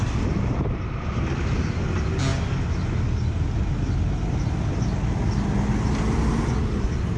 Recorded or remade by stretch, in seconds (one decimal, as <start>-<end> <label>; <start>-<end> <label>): 0.0-7.2 recorded